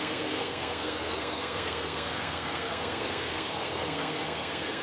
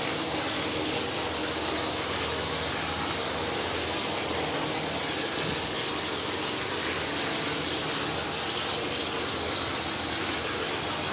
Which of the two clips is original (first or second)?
second